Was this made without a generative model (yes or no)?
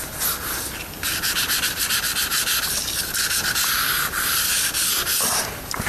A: yes